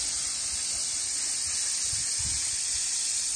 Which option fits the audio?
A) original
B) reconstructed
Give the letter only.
A